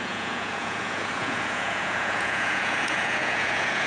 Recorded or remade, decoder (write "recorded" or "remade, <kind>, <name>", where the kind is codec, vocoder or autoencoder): remade, vocoder, Vocos